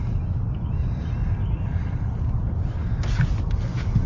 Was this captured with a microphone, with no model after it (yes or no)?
yes